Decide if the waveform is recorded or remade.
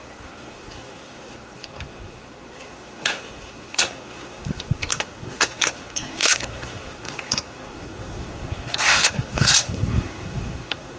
remade